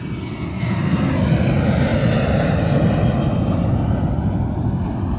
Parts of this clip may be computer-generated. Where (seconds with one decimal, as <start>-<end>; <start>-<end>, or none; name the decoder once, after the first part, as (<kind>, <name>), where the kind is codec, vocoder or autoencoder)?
0.5-1.1 (codec, SNAC)